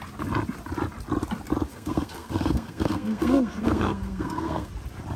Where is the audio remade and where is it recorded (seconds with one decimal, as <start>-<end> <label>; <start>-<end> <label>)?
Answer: 0.0-1.7 recorded; 1.7-4.7 remade; 4.7-5.2 recorded